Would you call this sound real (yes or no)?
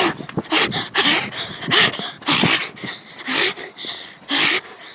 yes